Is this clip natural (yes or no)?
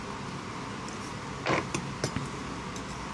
yes